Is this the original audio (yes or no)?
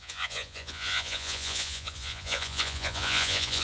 no